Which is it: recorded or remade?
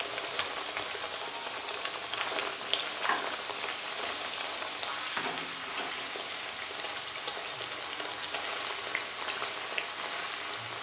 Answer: recorded